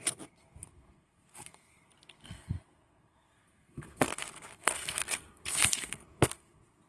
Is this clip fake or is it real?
fake